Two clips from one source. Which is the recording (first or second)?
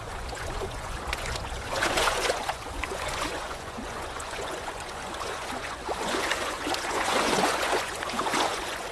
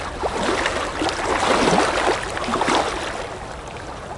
second